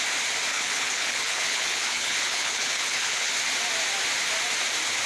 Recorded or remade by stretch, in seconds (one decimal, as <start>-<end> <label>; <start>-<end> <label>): 0.0-0.5 recorded; 0.5-3.3 remade; 3.3-5.1 recorded

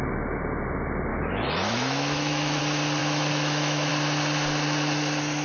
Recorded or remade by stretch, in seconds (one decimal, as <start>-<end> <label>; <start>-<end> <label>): 0.0-1.1 recorded; 1.1-2.6 remade; 2.6-3.0 recorded; 3.0-3.9 remade; 3.9-5.4 recorded

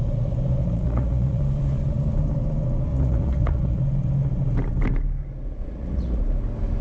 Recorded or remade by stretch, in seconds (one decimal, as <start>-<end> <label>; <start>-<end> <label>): 0.0-0.6 recorded; 0.6-1.4 remade; 1.4-2.9 recorded; 2.9-3.8 remade; 3.8-5.6 recorded; 5.6-6.2 remade; 6.2-6.8 recorded

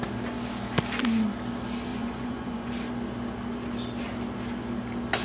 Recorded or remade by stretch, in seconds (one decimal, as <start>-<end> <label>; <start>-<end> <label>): 0.0-1.9 recorded; 1.9-2.7 remade; 2.7-5.2 recorded